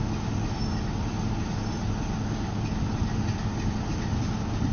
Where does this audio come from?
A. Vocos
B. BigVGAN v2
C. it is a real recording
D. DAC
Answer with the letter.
C